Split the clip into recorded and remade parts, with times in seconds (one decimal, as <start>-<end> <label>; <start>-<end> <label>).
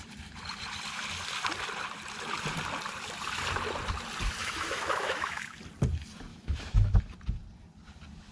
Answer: 0.0-4.4 recorded; 4.4-5.6 remade; 5.6-6.3 recorded; 6.3-7.0 remade; 7.0-8.3 recorded